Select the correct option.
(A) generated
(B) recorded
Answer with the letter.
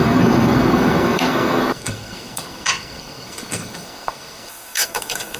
A